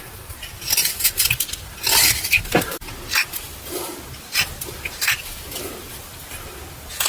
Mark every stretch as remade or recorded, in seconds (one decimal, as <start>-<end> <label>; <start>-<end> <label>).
0.0-7.1 recorded